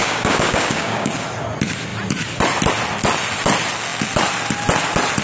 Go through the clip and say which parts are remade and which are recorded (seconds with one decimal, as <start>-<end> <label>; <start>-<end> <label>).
0.0-1.1 remade; 1.1-5.2 recorded